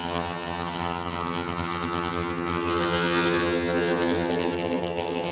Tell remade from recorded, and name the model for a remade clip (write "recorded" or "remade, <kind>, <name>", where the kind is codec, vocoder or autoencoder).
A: remade, vocoder, HiFi-GAN